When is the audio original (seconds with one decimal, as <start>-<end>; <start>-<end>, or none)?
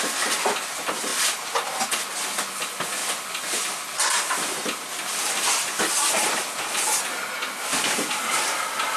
0.0-9.0